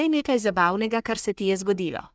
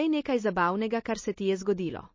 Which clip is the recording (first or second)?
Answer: second